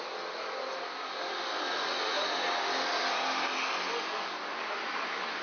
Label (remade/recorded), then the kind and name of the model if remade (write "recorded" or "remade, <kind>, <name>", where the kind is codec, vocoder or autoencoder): recorded